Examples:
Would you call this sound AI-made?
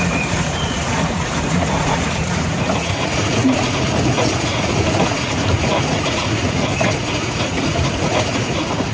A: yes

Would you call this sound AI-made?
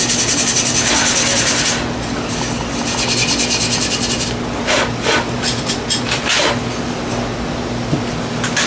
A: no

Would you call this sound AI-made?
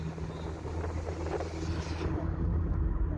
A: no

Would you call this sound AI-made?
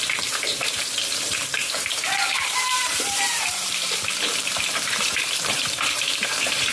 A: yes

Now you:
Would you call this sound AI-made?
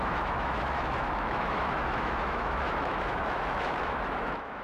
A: yes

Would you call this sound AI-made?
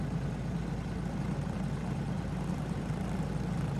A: no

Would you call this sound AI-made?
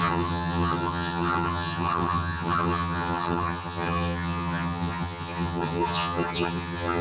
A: yes